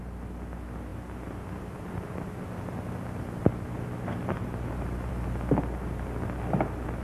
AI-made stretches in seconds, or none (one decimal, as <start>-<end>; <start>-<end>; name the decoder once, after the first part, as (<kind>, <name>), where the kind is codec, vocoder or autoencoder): none